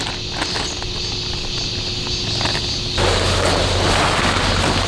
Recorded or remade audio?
recorded